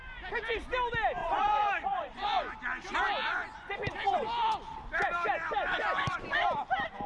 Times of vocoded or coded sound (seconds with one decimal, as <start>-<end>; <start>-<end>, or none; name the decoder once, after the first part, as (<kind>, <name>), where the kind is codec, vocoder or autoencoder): 1.2-2.5 (vocoder, Vocos); 3.2-4.3